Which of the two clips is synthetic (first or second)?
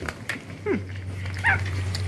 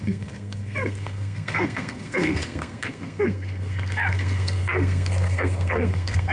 second